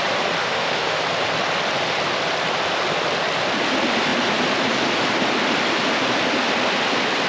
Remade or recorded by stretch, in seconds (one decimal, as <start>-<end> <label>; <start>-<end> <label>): 0.0-0.4 recorded; 0.4-1.0 remade; 1.0-7.3 recorded